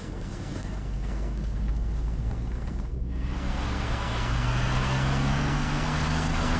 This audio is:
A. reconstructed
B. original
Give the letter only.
A